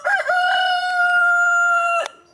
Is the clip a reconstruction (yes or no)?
yes